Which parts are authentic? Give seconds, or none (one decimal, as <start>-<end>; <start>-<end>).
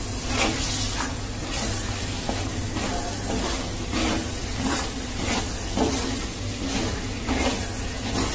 0.0-4.0; 5.4-8.3